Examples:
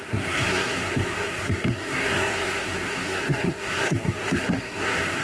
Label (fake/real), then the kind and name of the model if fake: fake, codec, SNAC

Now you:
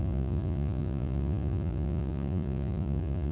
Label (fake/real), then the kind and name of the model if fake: fake, vocoder, Vocos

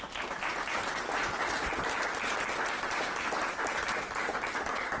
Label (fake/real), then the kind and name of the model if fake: real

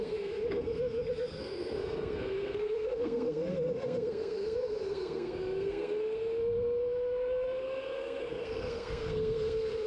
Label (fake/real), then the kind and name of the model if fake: fake, codec, SNAC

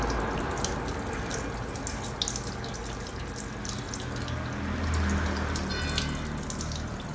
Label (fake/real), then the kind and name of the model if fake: real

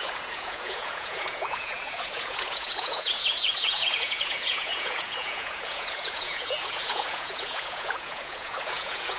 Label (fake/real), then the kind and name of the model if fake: fake, vocoder, Vocos